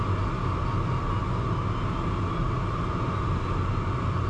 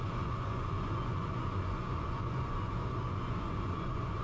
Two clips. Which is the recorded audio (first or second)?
first